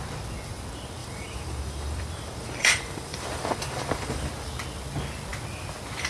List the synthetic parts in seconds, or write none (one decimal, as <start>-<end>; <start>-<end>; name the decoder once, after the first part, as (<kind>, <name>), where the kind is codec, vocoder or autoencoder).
1.0-4.3 (vocoder, BigVGAN v2)